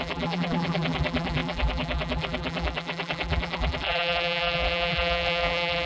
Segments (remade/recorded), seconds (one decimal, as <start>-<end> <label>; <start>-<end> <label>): 0.0-5.9 remade